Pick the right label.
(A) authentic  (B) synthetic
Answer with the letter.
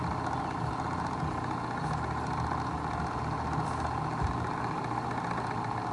A